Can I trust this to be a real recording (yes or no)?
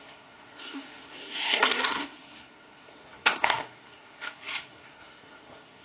no